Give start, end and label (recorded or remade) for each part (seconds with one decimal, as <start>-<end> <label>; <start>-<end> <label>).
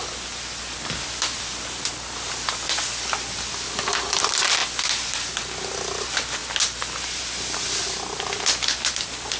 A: 0.0-9.4 recorded